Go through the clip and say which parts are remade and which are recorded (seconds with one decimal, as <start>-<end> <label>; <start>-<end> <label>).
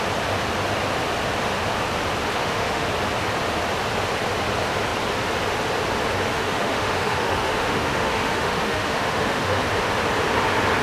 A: 0.0-2.3 recorded; 2.3-2.9 remade; 2.9-6.3 recorded; 6.3-9.6 remade; 9.6-10.8 recorded